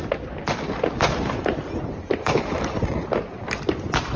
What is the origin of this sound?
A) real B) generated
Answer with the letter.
A